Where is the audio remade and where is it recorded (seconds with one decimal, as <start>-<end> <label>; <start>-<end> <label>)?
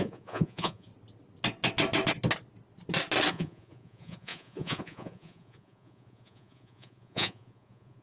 0.0-0.9 remade; 0.9-3.3 recorded; 3.3-8.0 remade